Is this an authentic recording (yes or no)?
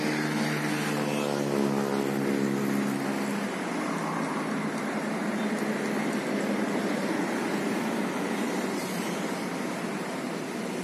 yes